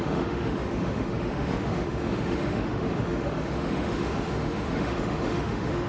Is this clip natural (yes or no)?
no